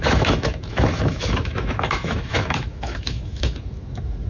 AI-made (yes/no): yes